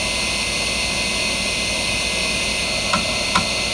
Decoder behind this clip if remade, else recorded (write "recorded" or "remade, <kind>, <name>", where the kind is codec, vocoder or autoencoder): recorded